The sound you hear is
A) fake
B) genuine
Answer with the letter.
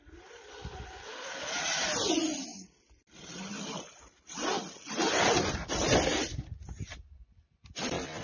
B